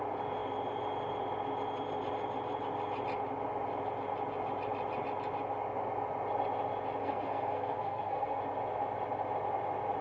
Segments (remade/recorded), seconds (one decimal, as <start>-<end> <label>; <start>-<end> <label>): 0.0-7.0 recorded; 7.0-8.4 remade; 8.4-10.0 recorded